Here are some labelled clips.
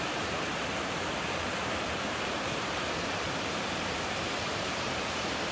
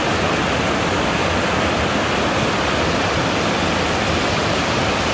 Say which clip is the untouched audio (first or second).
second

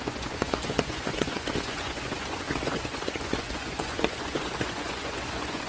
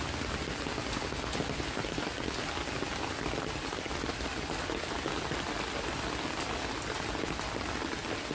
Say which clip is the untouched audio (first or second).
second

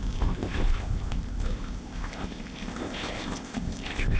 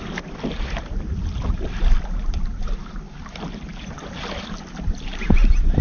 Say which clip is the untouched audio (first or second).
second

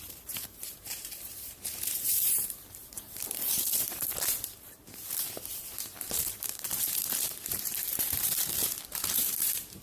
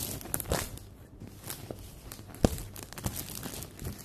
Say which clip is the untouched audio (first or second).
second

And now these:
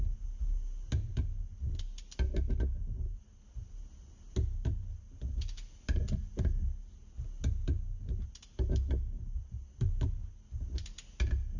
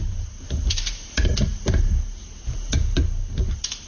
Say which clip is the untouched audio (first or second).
first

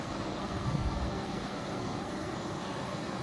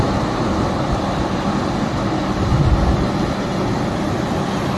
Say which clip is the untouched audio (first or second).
second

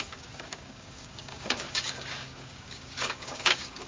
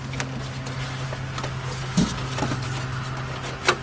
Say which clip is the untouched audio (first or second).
second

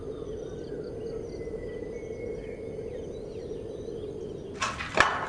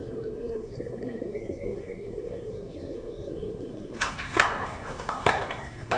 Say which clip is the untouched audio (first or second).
first